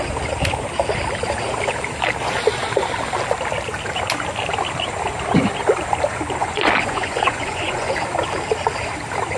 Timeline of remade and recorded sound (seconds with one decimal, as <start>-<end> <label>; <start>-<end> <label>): 0.0-6.4 recorded; 6.4-7.9 remade; 7.9-9.4 recorded